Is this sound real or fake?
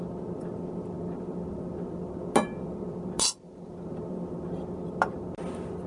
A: real